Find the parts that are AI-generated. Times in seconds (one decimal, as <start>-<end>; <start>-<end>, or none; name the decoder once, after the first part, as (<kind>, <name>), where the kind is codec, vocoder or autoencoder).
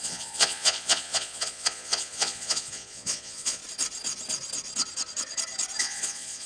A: 0.0-3.6 (vocoder, Vocos); 5.8-6.5